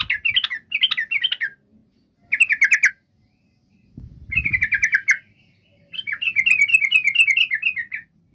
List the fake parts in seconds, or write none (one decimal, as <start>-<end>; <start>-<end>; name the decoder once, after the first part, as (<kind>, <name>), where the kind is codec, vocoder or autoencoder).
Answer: none